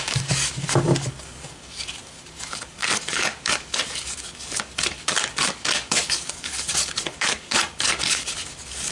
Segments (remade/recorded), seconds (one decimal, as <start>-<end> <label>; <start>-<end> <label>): 0.0-8.9 remade